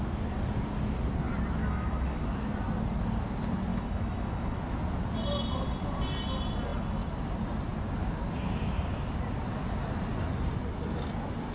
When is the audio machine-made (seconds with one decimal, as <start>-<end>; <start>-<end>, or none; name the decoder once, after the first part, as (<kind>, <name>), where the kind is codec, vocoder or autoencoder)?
1.6-2.2 (autoencoder, DAC-VAE); 3.7-4.6